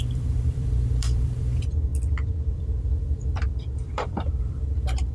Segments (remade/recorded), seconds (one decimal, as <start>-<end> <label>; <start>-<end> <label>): 0.0-1.9 remade; 1.9-2.5 recorded; 2.5-5.1 remade